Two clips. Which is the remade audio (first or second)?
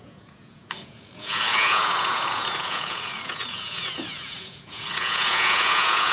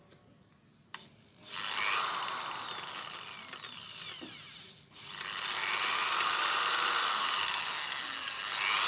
first